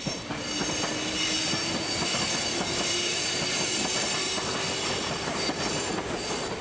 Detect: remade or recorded recorded